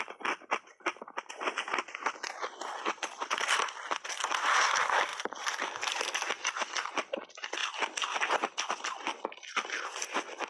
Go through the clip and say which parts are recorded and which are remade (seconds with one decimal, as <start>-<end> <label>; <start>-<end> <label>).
0.0-10.5 recorded